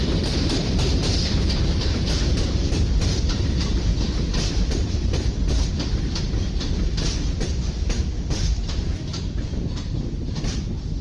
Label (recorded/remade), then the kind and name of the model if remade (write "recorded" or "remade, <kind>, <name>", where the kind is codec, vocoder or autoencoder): remade, vocoder, BigVGAN v2